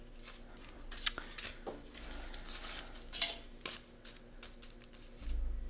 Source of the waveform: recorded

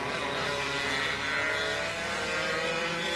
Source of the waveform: recorded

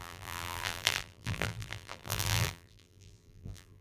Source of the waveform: remade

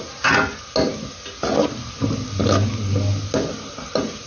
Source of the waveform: recorded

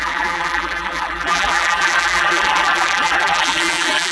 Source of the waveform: remade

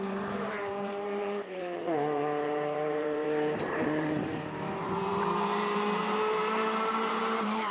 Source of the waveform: remade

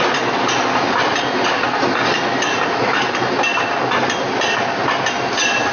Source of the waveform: recorded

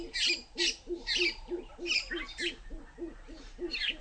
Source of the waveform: remade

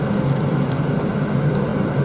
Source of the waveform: recorded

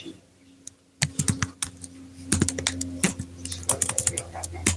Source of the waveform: recorded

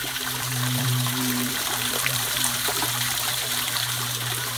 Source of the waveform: remade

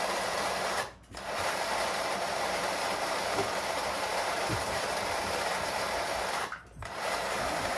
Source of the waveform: remade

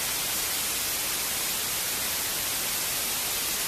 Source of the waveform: recorded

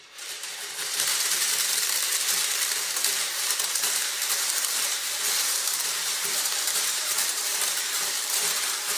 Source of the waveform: remade